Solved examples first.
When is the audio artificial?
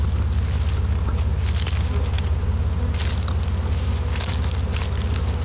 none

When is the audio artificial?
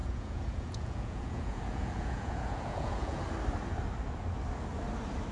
0.0-3.2